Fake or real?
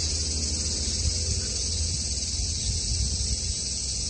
real